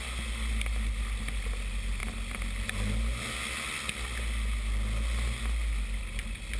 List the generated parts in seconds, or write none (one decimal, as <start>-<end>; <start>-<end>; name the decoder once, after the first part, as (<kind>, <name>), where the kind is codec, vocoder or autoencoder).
none